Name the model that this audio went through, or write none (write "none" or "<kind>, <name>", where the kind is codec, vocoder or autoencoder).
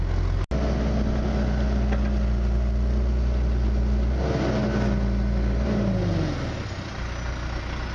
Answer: none